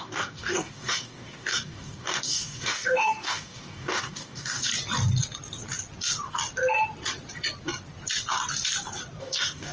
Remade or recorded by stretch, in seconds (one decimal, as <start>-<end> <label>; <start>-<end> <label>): 0.0-4.7 remade; 4.7-9.2 recorded; 9.2-9.7 remade